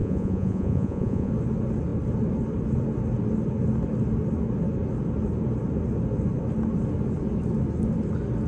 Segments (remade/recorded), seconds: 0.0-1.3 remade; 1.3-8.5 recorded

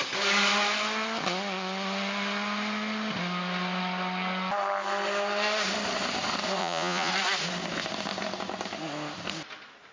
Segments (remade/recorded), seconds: 0.0-6.6 recorded; 6.6-7.1 remade; 7.1-9.9 recorded

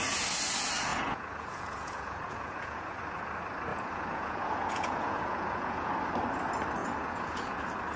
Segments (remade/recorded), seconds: 0.0-0.9 recorded; 0.9-3.0 remade; 3.0-3.7 recorded; 3.7-5.9 remade; 5.9-6.8 recorded; 6.8-7.6 remade; 7.6-8.0 recorded

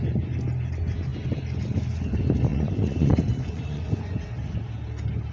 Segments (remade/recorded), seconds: 0.0-2.5 recorded; 2.5-4.2 remade; 4.2-5.3 recorded

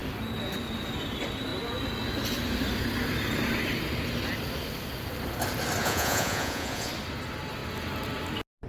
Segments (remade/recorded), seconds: 0.0-5.8 recorded; 5.8-6.9 remade; 6.9-8.7 recorded